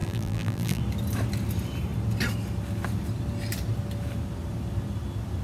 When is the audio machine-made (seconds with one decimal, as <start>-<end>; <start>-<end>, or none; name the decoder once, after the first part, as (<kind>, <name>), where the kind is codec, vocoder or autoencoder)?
0.0-0.8 (vocoder, BigVGAN v2)